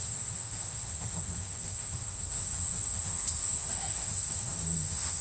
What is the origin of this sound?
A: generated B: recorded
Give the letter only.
A